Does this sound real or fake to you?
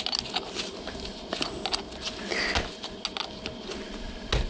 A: real